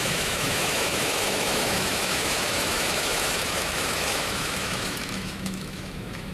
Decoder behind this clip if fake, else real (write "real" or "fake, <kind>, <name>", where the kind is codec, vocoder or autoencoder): fake, autoencoder, DAC-VAE